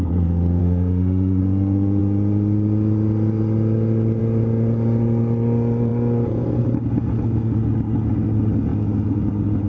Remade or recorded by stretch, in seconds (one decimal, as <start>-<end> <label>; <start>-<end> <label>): 0.0-0.6 recorded; 0.6-1.4 remade; 1.4-9.7 recorded